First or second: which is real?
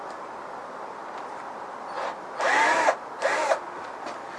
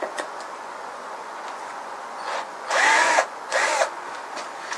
first